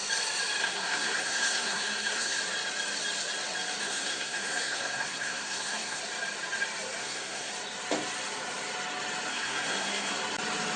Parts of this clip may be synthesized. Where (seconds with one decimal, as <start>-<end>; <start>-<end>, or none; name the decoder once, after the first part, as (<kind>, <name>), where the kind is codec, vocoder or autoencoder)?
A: 0.6-2.4 (codec, SNAC); 3.8-6.0; 7.0-7.5; 9.3-10.2